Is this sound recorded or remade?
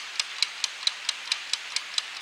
recorded